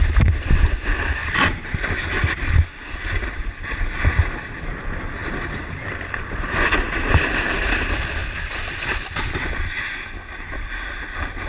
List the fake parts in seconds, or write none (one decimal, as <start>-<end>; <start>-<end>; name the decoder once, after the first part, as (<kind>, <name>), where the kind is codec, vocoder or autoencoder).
1.2-2.6 (vocoder, BigVGAN v2); 5.2-6.7; 8.2-9.5